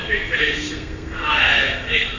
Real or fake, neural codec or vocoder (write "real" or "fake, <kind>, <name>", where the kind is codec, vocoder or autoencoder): fake, codec, SNAC